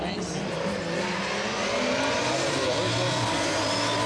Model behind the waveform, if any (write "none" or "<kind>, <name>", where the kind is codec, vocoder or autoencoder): none